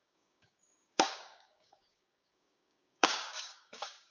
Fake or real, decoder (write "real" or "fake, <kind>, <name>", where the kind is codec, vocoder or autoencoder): fake, codec, DAC